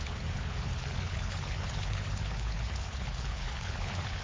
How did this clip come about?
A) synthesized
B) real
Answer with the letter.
A